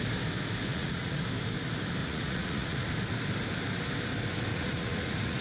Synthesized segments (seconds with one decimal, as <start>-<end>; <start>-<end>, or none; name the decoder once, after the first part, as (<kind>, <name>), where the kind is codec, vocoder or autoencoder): 0.7-1.2 (vocoder, Vocos); 2.0-2.9; 4.5-5.4